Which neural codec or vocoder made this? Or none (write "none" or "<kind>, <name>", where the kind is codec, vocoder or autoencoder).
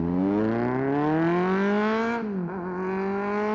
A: none